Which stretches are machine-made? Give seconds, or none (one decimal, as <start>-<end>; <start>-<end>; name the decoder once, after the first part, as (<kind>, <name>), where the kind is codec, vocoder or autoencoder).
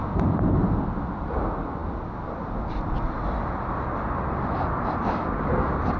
none